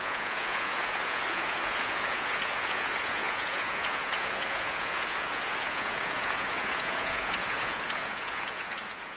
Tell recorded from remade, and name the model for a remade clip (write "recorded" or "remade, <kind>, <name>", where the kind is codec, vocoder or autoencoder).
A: remade, vocoder, Vocos